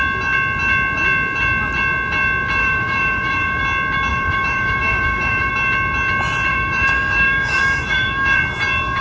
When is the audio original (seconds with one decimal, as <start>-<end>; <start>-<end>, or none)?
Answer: 0.0-2.6; 3.6-4.1; 5.5-6.5; 8.4-9.0

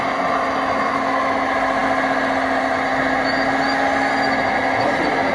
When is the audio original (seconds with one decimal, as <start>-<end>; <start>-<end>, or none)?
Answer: 0.0-5.3